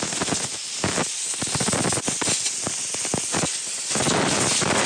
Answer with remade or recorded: recorded